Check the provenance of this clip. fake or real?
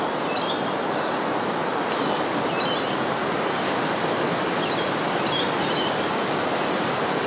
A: real